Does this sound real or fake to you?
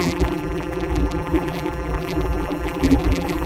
fake